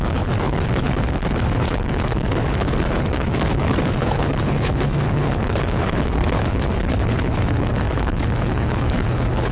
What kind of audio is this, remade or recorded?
remade